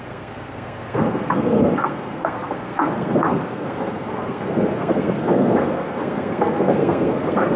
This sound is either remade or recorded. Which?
remade